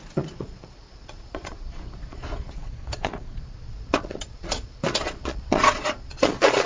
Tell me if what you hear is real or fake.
fake